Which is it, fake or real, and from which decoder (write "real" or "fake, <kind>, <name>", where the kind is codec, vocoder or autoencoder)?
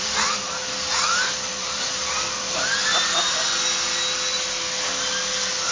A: real